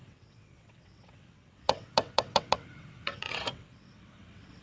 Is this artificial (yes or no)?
yes